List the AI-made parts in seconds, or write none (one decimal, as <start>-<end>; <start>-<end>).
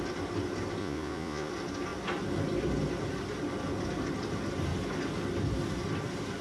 0.8-1.5